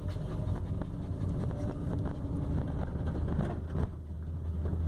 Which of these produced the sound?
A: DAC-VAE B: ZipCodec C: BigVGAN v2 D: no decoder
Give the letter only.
D